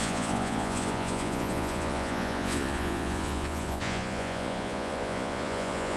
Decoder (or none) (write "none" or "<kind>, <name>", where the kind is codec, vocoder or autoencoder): vocoder, Vocos